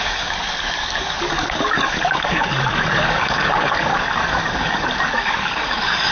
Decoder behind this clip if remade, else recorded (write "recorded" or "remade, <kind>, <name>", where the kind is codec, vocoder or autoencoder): remade, codec, DAC